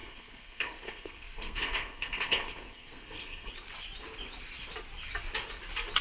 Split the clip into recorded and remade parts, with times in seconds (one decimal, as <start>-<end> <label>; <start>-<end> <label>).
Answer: 0.0-3.5 remade; 3.5-6.0 recorded